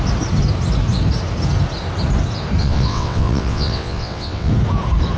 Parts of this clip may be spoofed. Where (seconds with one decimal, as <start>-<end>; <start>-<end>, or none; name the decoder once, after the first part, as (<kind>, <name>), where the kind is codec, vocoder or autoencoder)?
2.6-4.5 (vocoder, WaveNeXt)